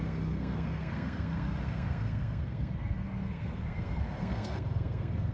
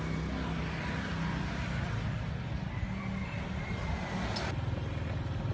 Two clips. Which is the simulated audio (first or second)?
first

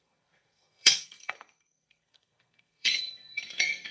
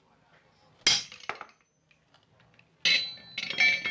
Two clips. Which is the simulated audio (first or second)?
first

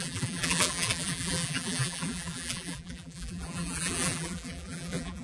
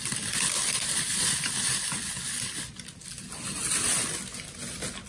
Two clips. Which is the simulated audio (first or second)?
first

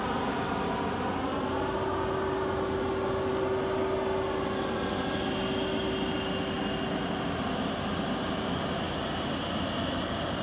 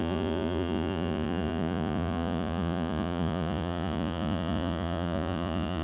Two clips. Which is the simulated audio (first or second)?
second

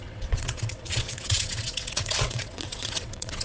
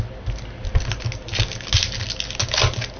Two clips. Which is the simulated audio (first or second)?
first